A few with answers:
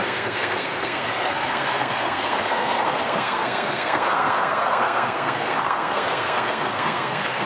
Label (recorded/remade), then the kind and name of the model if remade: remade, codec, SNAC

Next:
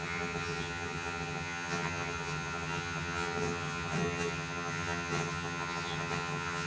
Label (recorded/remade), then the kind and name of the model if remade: remade, vocoder, HiFi-GAN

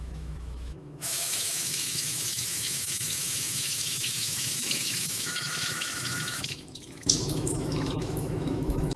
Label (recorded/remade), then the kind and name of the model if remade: remade, autoencoder, DAC-VAE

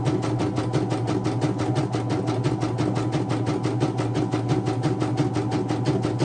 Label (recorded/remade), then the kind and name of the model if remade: recorded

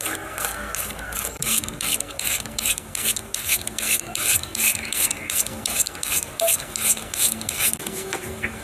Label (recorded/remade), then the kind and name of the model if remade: remade, codec, SNAC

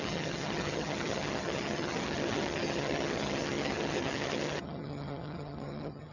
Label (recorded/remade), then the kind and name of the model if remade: remade, vocoder, HiFi-GAN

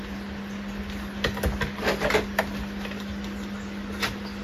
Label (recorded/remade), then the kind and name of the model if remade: recorded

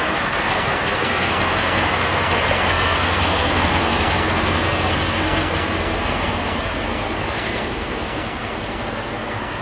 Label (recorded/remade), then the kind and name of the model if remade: remade, codec, SNAC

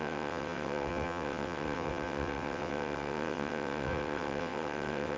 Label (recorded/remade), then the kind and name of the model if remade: remade, vocoder, WaveNeXt